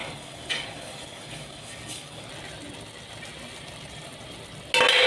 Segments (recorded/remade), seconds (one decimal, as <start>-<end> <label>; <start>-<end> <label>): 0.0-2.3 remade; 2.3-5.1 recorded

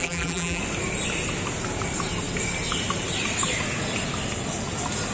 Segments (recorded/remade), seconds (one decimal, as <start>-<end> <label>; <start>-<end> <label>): 0.0-0.6 remade; 0.6-5.1 recorded

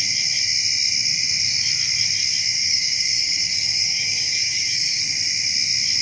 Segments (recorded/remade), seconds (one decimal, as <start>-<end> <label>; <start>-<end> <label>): 0.0-2.6 recorded; 2.6-5.0 remade; 5.0-6.0 recorded

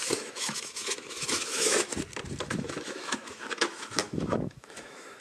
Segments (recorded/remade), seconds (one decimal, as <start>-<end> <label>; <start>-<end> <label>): 0.0-1.9 remade; 1.9-2.4 recorded; 2.4-5.2 remade

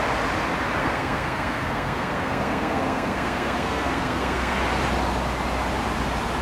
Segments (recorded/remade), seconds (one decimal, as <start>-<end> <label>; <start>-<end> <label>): 0.0-0.8 recorded; 0.8-4.6 remade; 4.6-6.4 recorded